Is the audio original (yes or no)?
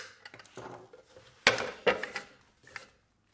yes